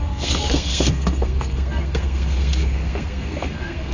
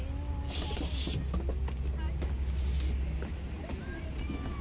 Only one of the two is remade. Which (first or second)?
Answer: first